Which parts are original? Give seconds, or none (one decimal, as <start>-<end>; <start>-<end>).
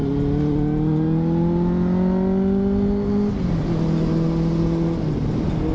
0.0-5.7